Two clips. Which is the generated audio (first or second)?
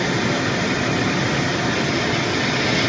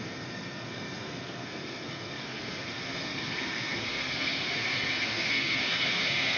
second